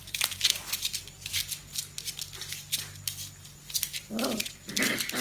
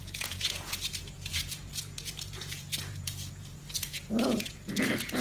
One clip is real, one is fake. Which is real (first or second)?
first